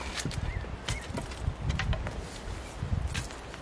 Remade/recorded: recorded